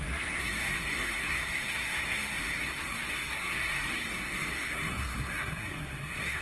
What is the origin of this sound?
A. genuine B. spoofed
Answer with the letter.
B